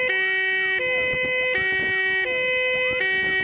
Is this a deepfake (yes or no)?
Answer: no